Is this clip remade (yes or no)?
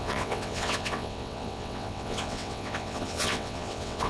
yes